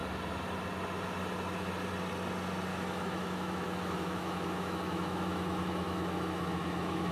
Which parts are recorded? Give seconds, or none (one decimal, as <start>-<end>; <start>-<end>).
0.0-2.7